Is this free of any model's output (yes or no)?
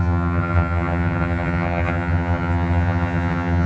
no